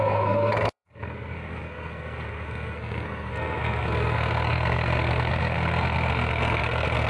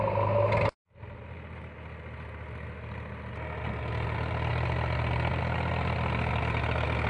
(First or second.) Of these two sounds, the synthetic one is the first